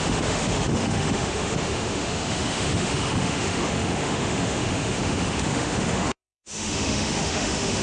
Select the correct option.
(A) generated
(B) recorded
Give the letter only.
A